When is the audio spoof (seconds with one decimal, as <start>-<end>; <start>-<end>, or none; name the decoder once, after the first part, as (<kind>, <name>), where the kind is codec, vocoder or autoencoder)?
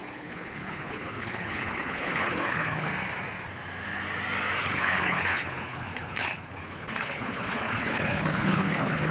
0.0-2.9 (codec, HILCodec); 4.6-9.1